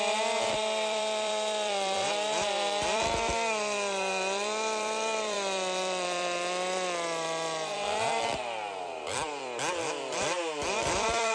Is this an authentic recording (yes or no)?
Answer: no